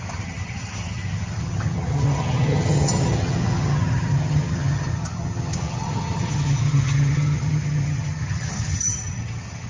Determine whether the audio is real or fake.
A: fake